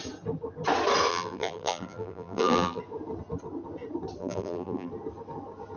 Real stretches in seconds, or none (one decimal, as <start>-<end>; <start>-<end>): 0.0-1.1; 2.8-4.2; 4.9-5.8